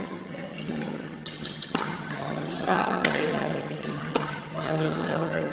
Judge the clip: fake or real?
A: fake